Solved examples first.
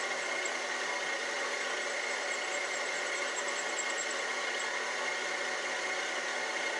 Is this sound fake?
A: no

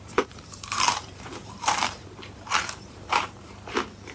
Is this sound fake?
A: yes